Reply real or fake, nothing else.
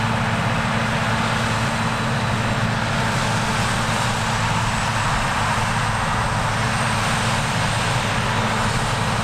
real